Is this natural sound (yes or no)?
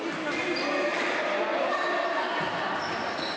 yes